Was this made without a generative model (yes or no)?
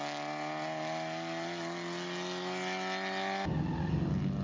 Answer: yes